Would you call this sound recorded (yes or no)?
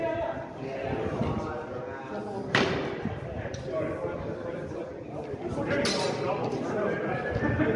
yes